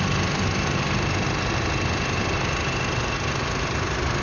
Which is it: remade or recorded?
recorded